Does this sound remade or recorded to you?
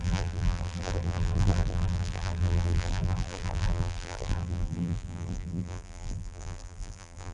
remade